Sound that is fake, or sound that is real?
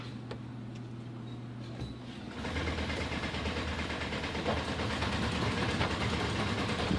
real